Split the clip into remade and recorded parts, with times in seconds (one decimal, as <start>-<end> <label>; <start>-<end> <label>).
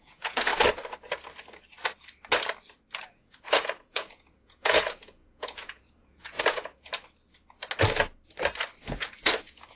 0.0-0.5 remade; 0.5-3.1 recorded; 3.1-6.9 remade; 6.9-8.8 recorded; 8.8-9.8 remade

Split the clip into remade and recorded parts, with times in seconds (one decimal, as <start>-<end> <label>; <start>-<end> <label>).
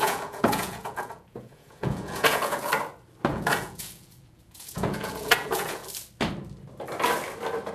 0.0-2.7 remade; 2.7-3.3 recorded; 3.3-5.8 remade; 5.8-7.7 recorded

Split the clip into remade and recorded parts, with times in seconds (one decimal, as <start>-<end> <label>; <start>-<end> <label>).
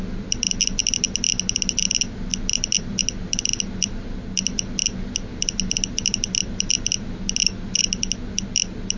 0.0-9.0 recorded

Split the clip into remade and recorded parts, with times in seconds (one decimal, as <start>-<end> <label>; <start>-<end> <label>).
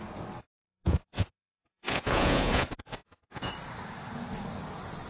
0.0-0.4 recorded; 0.4-3.5 remade; 3.5-5.1 recorded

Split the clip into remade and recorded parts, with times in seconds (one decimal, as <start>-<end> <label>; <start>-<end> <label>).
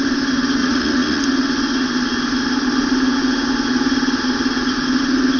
0.0-0.6 recorded; 0.6-1.2 remade; 1.2-5.4 recorded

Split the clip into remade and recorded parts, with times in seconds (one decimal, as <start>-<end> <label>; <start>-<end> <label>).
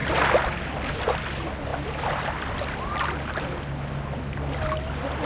0.0-5.3 recorded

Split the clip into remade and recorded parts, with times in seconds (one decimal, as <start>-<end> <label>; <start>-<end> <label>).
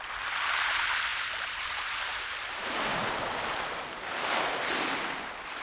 0.0-5.6 recorded